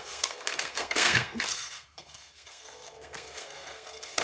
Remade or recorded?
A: remade